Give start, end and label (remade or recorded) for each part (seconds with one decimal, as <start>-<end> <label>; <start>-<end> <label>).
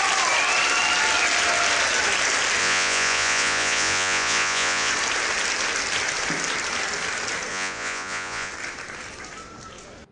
0.0-2.6 recorded; 2.6-4.9 remade; 4.9-7.5 recorded; 7.5-8.5 remade; 8.5-10.1 recorded